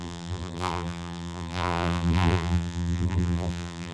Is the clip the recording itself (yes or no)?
no